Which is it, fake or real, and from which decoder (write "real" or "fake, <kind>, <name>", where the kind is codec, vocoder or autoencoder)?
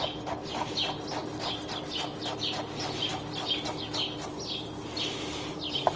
real